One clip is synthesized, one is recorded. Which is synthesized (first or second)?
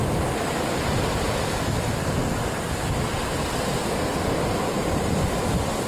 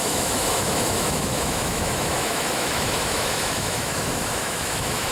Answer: second